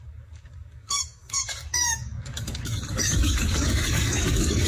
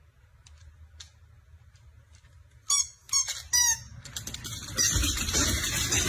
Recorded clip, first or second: second